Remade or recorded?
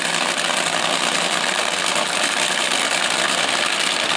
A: remade